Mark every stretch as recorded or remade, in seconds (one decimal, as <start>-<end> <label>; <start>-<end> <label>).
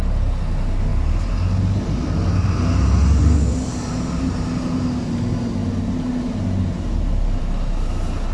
0.0-8.3 recorded